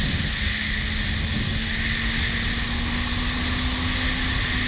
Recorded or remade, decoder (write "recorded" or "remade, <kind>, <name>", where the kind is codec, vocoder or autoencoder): recorded